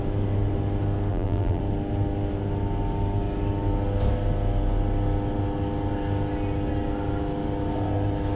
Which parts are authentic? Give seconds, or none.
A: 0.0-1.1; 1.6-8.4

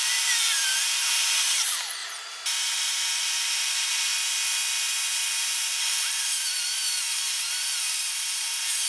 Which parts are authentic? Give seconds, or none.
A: 4.1-5.4

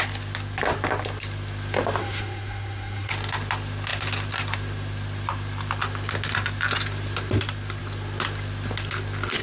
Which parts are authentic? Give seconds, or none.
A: 0.0-2.0; 3.1-9.4

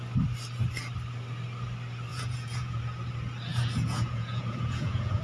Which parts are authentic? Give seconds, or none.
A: 0.0-2.1; 2.8-3.5

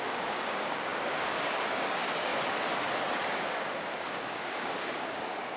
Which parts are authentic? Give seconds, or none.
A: 2.3-3.3

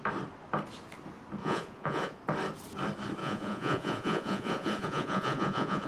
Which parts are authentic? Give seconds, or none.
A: 0.0-1.4; 2.2-3.2